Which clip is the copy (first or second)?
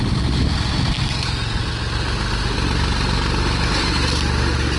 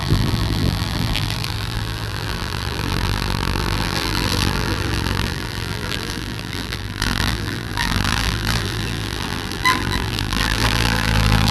second